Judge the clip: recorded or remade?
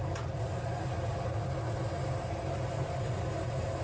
recorded